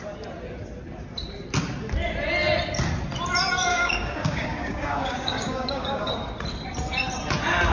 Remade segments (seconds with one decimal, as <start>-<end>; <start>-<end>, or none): 3.7-6.1